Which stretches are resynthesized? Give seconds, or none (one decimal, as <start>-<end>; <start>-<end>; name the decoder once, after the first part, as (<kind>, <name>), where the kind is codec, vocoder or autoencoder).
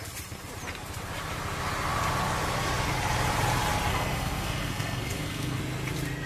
3.9-5.6 (codec, SNAC)